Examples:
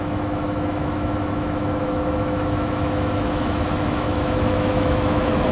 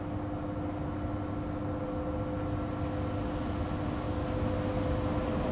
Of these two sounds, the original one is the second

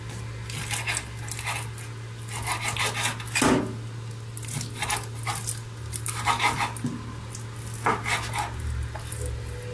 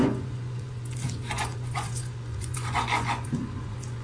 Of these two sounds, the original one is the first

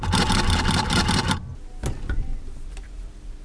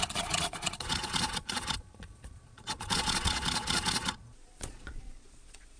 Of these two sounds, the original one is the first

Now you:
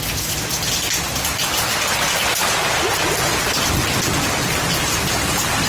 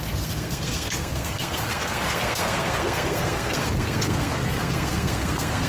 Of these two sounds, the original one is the first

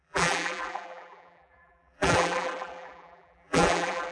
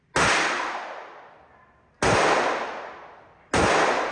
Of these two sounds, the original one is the second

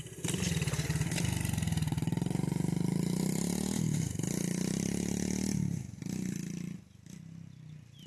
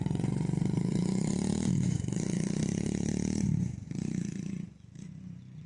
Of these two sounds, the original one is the first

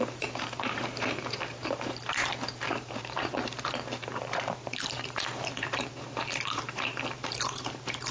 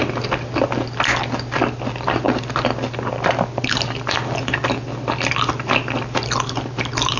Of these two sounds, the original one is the second